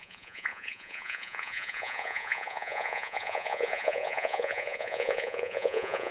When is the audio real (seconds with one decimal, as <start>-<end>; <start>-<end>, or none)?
none